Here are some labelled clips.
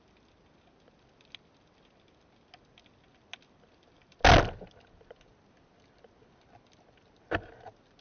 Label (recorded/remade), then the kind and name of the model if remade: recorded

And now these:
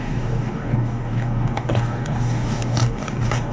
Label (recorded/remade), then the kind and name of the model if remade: remade, codec, DAC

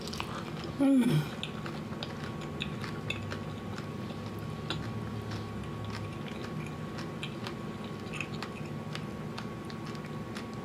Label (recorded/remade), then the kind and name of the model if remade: recorded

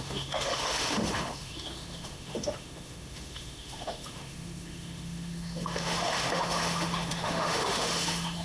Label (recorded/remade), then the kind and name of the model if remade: remade, autoencoder, DAC-VAE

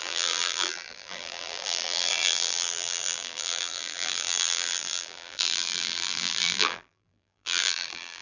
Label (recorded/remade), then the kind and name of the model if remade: remade, vocoder, BigVGAN v2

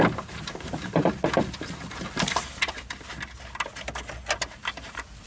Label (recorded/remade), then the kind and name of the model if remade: recorded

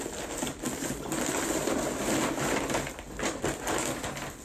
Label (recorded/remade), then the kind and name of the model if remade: recorded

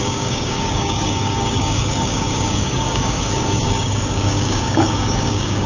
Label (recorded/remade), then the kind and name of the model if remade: remade, codec, DAC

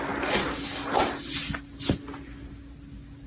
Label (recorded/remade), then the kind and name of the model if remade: recorded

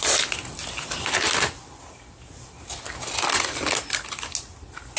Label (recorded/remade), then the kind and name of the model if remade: recorded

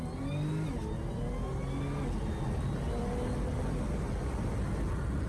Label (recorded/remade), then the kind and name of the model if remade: recorded